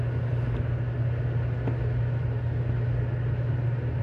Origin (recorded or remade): recorded